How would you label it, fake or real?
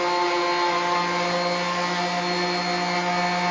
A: real